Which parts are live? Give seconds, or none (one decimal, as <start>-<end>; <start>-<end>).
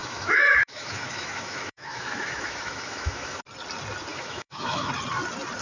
3.4-4.1; 4.9-5.6